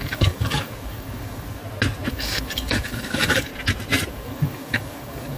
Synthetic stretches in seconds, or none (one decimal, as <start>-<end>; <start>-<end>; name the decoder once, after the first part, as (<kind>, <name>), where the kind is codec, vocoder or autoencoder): 0.0-1.6 (codec, DAC); 2.1-3.5; 4.1-5.4